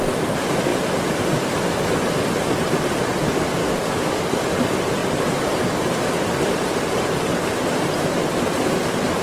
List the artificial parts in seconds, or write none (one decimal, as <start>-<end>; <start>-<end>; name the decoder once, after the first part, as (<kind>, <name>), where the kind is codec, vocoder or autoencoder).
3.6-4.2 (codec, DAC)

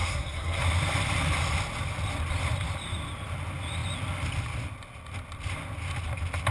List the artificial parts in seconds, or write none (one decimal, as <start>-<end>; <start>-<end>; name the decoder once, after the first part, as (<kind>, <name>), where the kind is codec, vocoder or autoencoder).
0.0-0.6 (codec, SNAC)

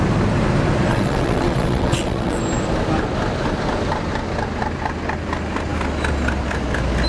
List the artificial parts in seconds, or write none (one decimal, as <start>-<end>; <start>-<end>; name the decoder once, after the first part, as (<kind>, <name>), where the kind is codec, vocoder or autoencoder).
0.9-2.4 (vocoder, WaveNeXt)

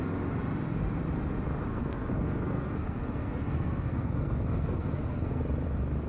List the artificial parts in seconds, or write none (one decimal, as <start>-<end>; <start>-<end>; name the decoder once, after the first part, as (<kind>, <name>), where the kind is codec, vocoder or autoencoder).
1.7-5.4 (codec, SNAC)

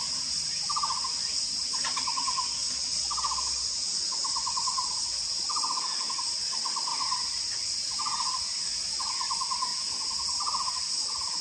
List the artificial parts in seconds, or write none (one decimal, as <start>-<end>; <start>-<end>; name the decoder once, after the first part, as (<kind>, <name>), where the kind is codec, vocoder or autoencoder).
none

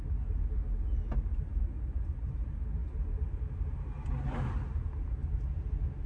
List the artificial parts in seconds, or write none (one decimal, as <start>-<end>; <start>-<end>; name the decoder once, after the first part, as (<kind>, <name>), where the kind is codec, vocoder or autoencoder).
none